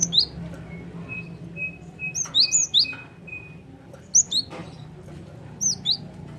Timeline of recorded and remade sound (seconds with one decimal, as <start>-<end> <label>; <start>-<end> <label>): 0.0-6.4 recorded